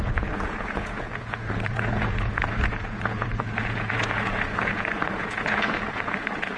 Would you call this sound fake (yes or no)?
yes